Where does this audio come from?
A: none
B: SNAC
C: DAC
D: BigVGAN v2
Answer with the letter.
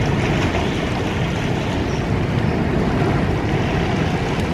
A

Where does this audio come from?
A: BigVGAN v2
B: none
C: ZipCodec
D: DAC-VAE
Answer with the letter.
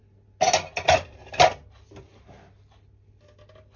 B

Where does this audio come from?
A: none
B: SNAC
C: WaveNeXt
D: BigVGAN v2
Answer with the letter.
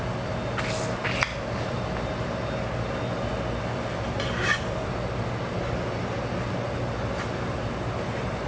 A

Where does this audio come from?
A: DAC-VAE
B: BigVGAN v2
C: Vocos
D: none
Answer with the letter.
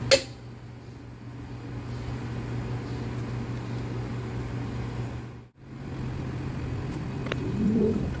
D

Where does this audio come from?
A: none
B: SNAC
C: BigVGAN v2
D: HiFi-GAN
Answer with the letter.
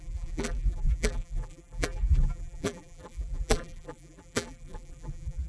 C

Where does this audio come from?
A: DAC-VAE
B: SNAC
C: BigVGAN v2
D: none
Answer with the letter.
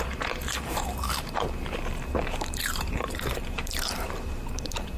C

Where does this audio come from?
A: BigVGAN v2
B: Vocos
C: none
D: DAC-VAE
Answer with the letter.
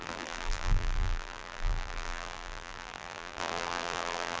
A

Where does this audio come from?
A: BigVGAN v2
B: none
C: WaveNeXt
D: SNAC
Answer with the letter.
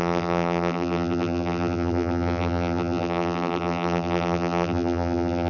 A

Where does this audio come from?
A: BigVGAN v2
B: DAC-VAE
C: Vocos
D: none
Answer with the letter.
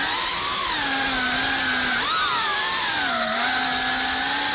D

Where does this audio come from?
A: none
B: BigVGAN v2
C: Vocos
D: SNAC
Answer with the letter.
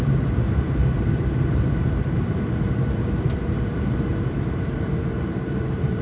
B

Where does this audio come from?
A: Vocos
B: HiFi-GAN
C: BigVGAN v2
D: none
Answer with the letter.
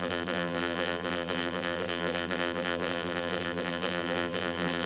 C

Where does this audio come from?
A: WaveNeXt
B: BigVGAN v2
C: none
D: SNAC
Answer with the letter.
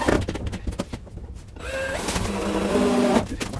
C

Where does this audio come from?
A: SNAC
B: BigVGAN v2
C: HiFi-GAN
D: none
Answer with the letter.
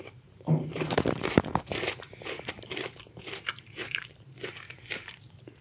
B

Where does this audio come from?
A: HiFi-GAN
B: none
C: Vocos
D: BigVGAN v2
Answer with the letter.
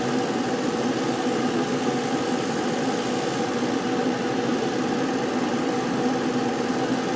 B